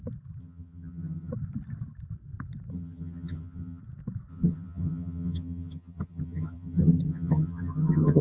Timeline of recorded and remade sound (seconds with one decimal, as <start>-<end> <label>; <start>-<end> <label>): 0.0-0.4 recorded; 0.4-1.3 remade; 1.3-2.7 recorded; 2.7-3.8 remade; 3.8-4.3 recorded; 4.3-8.2 remade